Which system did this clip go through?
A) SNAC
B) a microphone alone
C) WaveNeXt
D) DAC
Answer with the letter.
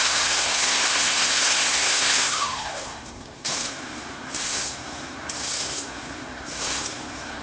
A